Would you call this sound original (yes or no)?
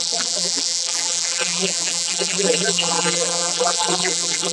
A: no